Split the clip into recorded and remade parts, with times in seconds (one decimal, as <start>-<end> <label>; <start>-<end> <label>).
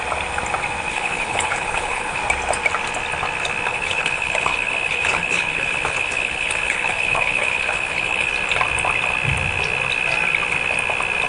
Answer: 0.0-0.9 recorded; 0.9-2.2 remade; 2.2-3.7 recorded; 3.7-8.3 remade; 8.3-11.3 recorded